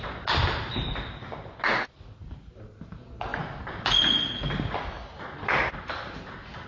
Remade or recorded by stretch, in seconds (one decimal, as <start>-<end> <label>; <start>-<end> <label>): 0.0-6.7 recorded